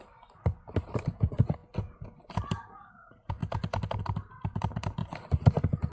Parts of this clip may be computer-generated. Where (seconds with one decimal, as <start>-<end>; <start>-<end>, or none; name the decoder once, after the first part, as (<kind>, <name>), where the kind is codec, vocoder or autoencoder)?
0.0-1.6 (vocoder, BigVGAN v2); 2.9-3.4; 4.0-5.0